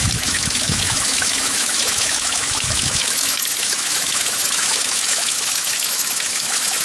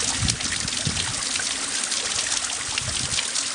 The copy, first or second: first